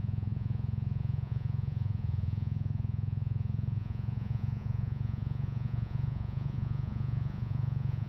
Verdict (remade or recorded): remade